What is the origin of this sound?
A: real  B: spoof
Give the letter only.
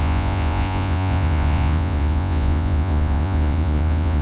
B